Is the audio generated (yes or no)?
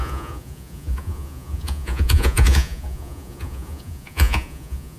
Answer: yes